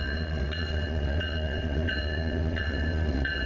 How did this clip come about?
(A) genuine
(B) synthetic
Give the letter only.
B